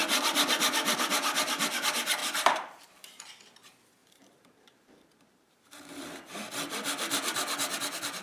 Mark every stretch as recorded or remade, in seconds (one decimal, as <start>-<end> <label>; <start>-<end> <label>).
0.0-2.2 recorded; 2.2-3.2 remade; 3.2-4.0 recorded; 4.0-6.5 remade; 6.5-8.2 recorded